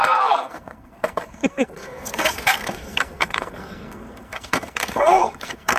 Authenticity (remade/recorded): remade